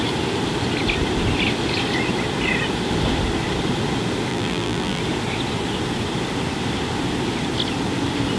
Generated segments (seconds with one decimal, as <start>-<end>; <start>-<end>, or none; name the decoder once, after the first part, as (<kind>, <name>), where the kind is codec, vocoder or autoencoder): 4.3-5.0 (vocoder, BigVGAN v2)